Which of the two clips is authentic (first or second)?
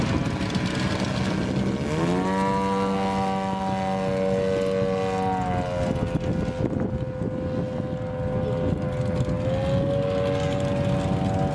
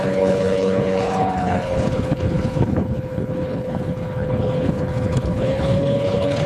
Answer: first